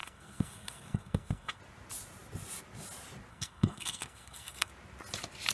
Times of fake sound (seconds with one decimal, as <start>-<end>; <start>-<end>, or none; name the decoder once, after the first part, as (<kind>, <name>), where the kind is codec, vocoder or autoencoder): 0.0-1.6 (codec, SNAC); 3.3-4.7